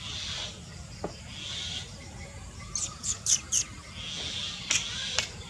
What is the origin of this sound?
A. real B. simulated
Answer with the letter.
A